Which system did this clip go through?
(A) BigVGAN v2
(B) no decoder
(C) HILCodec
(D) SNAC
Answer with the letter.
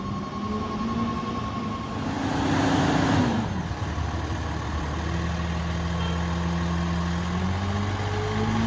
B